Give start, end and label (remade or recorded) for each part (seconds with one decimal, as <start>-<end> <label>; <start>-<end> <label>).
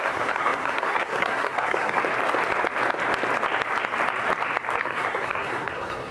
0.0-2.0 remade; 2.0-4.8 recorded; 4.8-6.1 remade